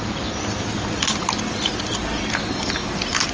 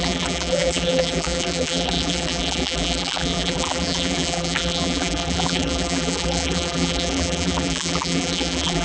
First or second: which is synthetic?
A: second